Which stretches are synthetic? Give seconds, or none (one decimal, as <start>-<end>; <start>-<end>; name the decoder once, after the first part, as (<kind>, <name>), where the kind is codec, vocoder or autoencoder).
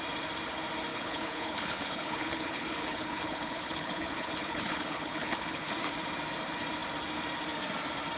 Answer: 0.9-5.7 (codec, HILCodec)